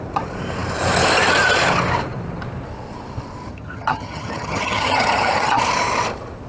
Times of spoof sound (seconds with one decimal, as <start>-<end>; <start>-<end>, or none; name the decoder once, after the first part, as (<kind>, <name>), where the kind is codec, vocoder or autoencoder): 3.5-5.7 (vocoder, HiFi-GAN)